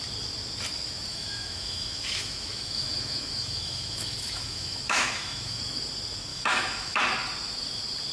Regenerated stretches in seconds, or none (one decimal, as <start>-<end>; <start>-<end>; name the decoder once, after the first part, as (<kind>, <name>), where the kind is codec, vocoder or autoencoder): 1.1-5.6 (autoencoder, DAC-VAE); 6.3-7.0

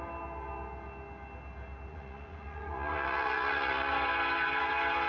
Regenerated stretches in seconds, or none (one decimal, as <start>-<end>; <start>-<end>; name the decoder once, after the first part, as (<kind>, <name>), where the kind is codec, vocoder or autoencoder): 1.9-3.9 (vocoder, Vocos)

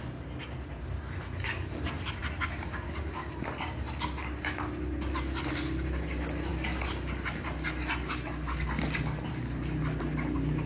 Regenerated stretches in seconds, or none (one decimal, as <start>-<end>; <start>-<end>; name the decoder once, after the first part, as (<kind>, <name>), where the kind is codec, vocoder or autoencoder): none

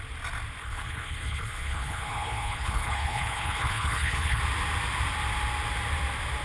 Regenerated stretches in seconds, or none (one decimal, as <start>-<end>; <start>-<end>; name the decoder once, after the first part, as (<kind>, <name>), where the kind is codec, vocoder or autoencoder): 0.6-4.4 (codec, HILCodec)

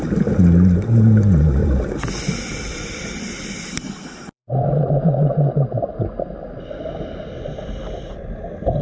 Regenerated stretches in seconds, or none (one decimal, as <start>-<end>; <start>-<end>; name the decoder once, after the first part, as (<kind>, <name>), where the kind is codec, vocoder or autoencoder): 1.6-5.0 (vocoder, BigVGAN v2)

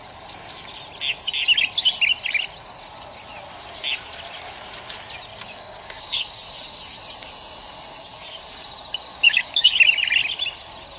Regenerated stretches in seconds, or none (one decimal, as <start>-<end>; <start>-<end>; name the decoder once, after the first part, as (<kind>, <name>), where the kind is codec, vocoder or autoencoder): 5.3-6.2 (codec, DAC); 9.1-9.8

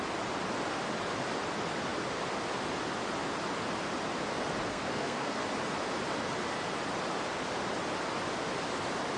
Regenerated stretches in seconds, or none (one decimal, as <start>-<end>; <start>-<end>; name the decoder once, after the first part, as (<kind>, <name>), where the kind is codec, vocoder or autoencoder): 4.7-5.4 (codec, SNAC)